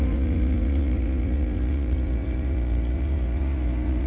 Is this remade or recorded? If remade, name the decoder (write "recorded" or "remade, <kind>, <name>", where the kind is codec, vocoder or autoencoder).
remade, vocoder, Vocos